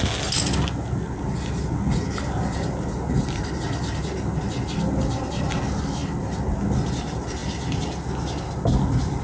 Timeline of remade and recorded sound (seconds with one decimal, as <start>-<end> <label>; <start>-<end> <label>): 0.0-9.2 recorded